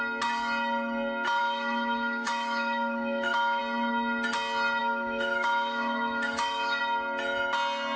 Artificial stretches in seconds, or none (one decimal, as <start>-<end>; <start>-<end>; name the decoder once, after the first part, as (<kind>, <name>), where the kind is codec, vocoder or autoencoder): 1.4-3.6 (autoencoder, DAC-VAE); 4.8-6.8